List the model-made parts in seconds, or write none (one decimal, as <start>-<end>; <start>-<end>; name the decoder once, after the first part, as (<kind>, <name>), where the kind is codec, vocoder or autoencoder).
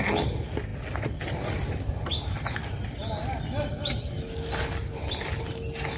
none